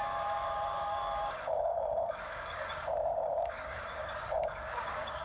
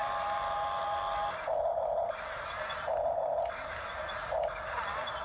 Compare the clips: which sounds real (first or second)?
second